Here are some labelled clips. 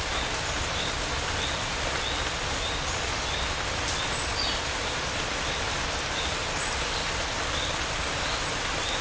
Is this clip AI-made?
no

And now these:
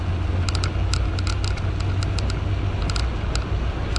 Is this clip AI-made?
no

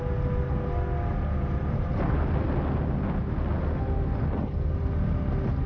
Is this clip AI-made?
no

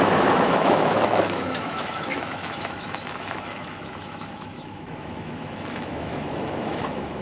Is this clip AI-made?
yes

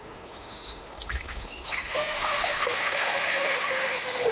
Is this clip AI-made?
yes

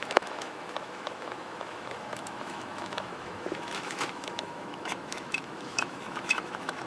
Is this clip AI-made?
yes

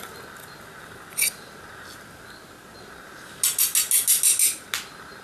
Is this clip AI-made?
no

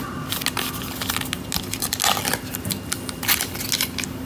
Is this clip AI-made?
no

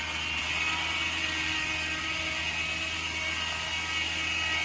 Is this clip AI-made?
no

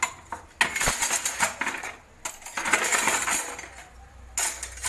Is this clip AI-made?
no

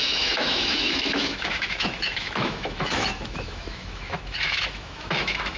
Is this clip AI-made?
yes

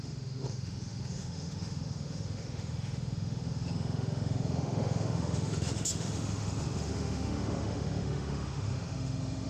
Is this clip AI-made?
yes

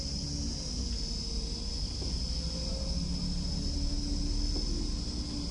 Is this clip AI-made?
no